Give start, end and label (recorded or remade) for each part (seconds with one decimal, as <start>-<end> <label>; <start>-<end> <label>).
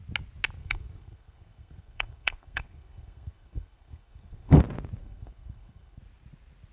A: 0.0-0.6 recorded; 0.6-4.6 remade; 4.6-5.0 recorded; 5.0-6.0 remade; 6.0-6.7 recorded